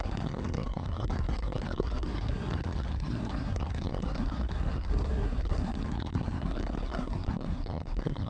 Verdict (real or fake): fake